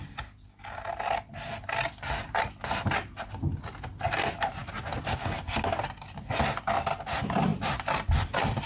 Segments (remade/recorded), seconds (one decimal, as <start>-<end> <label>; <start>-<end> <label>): 0.0-8.7 recorded